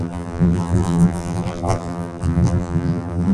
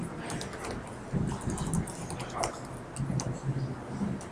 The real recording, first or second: second